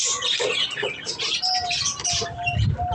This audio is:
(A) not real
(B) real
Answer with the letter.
B